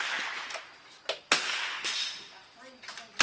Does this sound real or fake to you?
real